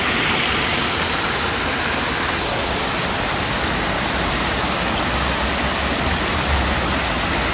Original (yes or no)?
yes